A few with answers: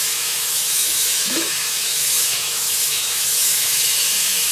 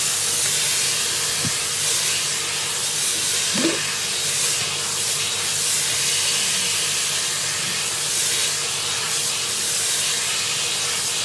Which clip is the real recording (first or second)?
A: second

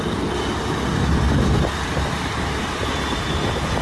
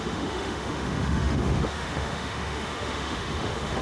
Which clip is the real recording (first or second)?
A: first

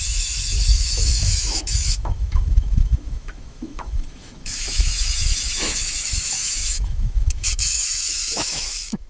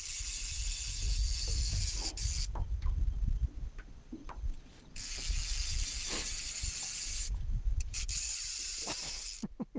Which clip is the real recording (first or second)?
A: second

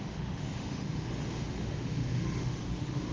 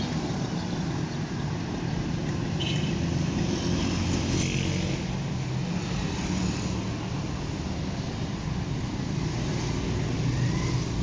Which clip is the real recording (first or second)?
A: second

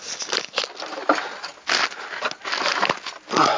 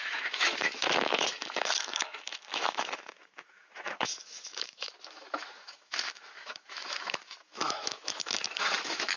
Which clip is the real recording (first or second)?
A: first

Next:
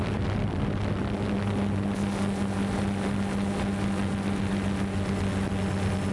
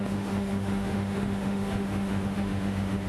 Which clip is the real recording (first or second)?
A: first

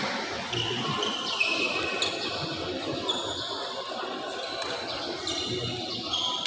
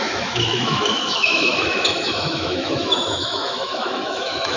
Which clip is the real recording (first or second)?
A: first